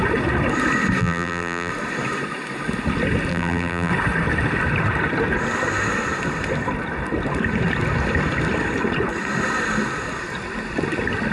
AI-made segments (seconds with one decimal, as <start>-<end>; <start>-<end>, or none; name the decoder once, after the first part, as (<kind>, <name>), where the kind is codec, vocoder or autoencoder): 1.0-1.7 (vocoder, BigVGAN v2); 3.3-3.9

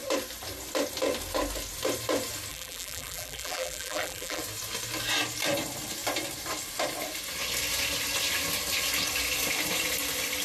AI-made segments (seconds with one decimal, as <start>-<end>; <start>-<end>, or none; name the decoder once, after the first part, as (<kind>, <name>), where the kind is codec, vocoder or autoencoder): 2.5-4.4 (vocoder, BigVGAN v2)

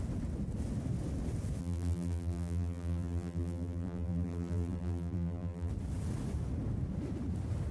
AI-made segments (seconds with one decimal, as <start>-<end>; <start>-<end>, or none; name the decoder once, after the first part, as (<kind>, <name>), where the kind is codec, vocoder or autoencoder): 1.6-5.7 (vocoder, BigVGAN v2)

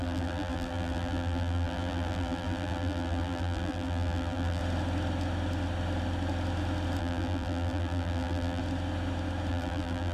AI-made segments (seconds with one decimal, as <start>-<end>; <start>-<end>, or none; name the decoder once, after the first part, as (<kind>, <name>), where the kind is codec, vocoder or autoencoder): 0.0-4.6 (vocoder, BigVGAN v2); 7.0-8.6; 9.5-10.1

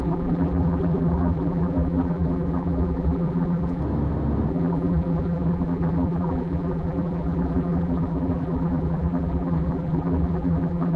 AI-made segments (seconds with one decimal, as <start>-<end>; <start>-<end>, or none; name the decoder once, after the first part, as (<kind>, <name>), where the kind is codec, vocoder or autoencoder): 0.0-3.8 (vocoder, BigVGAN v2); 4.5-11.0

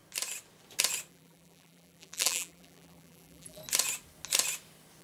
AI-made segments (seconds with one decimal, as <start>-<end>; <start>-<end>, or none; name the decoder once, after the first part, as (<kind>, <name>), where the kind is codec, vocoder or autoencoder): 1.1-3.6 (vocoder, BigVGAN v2)